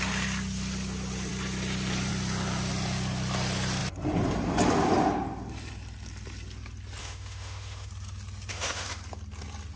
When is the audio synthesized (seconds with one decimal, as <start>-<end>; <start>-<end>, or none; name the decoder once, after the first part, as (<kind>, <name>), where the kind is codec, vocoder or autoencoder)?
7.0-7.9 (autoencoder, DAC-VAE); 8.5-9.0